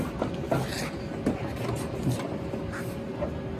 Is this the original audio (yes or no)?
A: yes